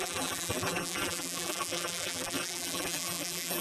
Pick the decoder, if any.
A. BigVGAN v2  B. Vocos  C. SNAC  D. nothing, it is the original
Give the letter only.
A